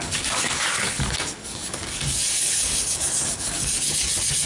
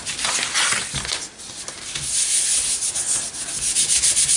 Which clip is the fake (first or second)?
first